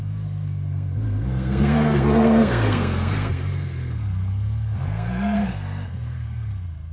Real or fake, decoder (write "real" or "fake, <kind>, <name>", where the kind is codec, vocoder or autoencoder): fake, codec, SNAC